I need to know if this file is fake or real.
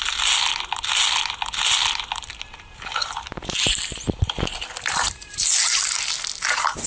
real